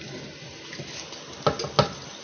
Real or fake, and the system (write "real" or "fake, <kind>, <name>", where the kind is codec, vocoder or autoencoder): real